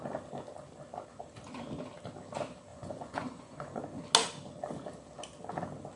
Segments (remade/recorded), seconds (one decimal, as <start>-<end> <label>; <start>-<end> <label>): 0.0-2.7 recorded; 2.7-3.8 remade; 3.8-6.0 recorded